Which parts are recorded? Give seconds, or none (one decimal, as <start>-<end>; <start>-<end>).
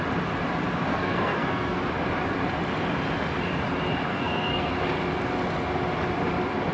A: 0.0-0.9; 1.8-4.1; 4.7-6.7